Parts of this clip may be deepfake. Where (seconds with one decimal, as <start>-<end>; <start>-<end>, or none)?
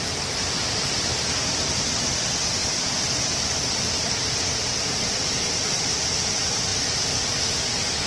0.4-2.2